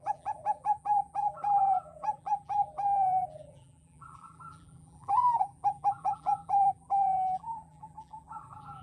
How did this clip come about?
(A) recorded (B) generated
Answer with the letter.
B